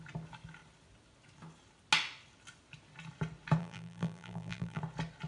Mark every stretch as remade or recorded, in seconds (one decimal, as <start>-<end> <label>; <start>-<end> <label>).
0.0-3.6 recorded; 3.6-4.8 remade; 4.8-5.3 recorded